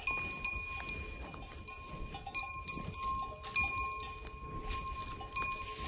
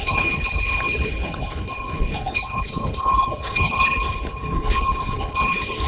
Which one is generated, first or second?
second